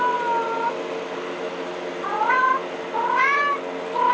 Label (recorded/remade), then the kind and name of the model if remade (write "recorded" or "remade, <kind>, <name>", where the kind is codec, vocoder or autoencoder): recorded